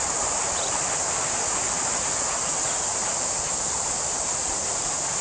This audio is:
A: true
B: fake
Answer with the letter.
A